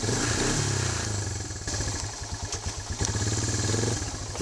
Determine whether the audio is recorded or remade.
recorded